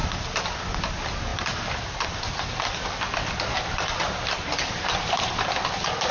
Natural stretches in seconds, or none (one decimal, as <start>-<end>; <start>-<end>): 0.0-6.1